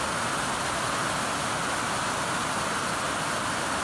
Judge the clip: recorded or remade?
recorded